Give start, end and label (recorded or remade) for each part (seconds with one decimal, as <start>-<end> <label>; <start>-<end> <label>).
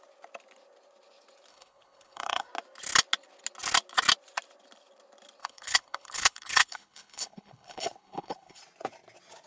0.0-1.5 recorded; 1.5-2.5 remade; 2.5-5.4 recorded; 5.4-8.6 remade; 8.6-9.5 recorded